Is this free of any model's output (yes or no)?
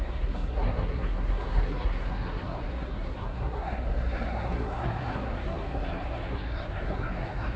no